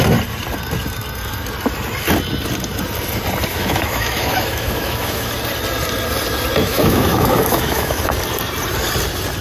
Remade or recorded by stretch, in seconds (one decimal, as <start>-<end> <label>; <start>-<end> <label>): 0.0-3.5 recorded; 3.5-5.3 remade; 5.3-6.6 recorded; 6.6-8.0 remade; 8.0-9.4 recorded